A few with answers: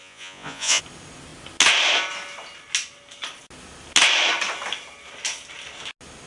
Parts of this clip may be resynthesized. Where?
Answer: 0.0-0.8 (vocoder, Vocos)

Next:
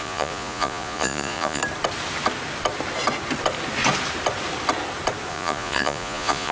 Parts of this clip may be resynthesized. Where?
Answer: 0.0-1.6 (vocoder, Vocos); 5.3-6.5

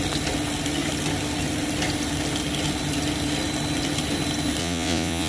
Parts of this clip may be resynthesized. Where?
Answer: 4.6-5.3 (vocoder, Vocos)

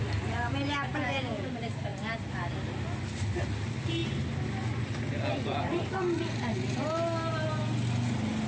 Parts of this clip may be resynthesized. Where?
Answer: 0.9-1.5 (vocoder, Vocos)

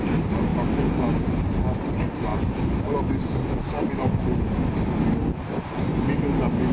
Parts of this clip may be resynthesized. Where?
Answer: none

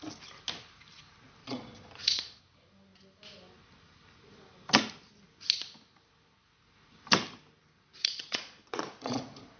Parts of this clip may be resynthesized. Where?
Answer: 1.4-2.4 (vocoder, Vocos); 8.0-9.2